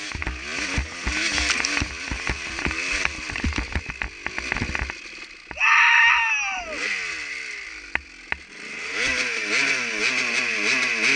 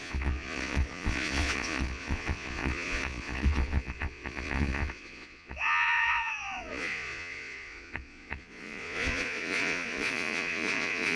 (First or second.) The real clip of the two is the first